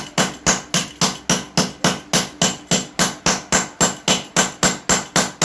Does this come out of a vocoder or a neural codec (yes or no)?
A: no